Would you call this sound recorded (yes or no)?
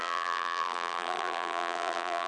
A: no